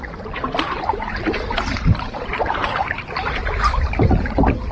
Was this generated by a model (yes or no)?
no